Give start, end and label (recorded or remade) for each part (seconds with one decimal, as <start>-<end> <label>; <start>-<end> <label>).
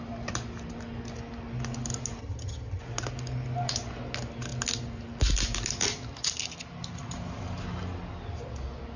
0.0-2.2 recorded; 2.2-2.8 remade; 2.8-9.0 recorded